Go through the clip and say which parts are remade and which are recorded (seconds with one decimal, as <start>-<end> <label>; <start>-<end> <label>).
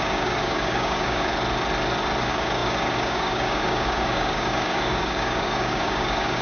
0.0-1.3 remade; 1.3-2.2 recorded; 2.2-6.4 remade